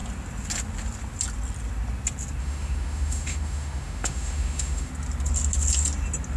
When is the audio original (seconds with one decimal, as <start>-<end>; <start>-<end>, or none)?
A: 0.0-2.4; 4.9-6.4

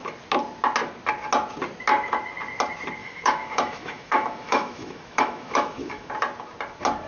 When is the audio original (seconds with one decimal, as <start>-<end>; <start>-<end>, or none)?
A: 0.0-3.0; 6.1-7.1

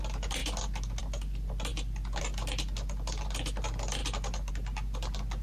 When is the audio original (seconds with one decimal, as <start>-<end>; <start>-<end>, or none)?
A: 0.0-5.4

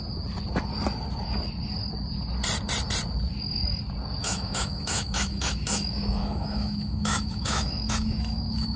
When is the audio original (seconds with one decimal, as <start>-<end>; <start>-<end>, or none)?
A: 0.0-4.2